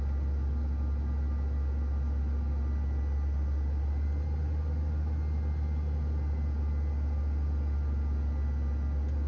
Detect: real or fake real